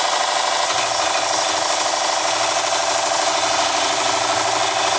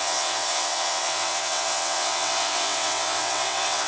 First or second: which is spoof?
second